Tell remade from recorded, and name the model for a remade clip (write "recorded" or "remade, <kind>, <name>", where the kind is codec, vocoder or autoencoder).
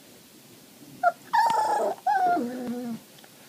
recorded